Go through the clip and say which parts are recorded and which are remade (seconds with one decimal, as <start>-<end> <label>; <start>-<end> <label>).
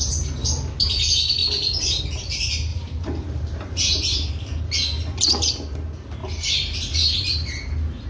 0.0-2.7 recorded; 2.7-4.3 remade; 4.3-6.2 recorded; 6.2-7.5 remade; 7.5-8.1 recorded